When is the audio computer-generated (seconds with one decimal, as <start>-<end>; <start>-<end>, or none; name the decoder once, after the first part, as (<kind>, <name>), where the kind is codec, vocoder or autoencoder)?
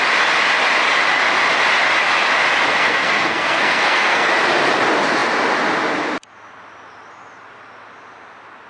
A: 2.7-4.3 (codec, SNAC)